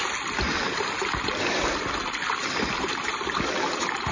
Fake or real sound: real